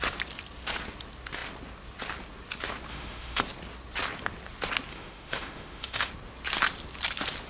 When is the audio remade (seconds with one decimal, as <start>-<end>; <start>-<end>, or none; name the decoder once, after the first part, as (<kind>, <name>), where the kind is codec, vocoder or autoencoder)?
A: 2.9-3.4 (autoencoder, DAC-VAE); 4.9-6.1